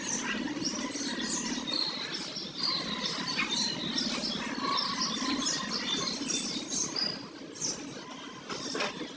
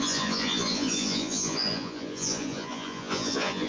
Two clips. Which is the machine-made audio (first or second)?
second